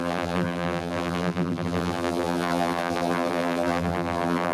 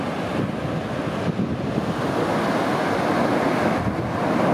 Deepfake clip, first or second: first